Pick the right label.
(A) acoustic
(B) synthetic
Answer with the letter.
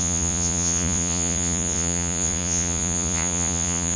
B